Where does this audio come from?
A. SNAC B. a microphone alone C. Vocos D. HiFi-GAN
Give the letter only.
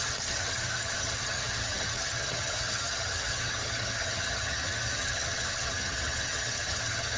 D